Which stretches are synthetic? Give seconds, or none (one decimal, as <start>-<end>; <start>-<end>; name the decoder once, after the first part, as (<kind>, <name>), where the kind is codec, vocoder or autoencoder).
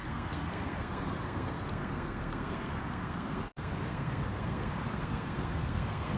0.0-6.2 (codec, SNAC)